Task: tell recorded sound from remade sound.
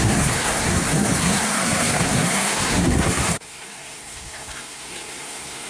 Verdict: remade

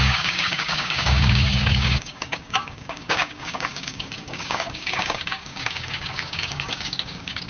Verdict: remade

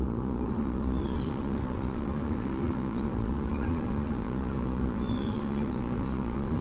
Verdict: remade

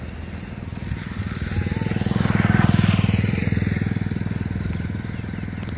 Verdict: recorded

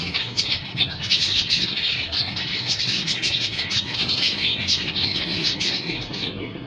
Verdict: remade